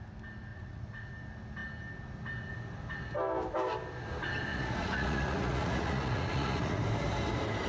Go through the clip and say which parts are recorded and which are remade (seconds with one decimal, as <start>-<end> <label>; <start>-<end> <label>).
0.0-0.5 recorded; 0.5-1.1 remade; 1.1-4.5 recorded; 4.5-6.8 remade; 6.8-7.7 recorded